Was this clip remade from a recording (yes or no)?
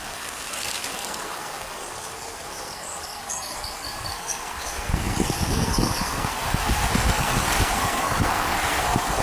yes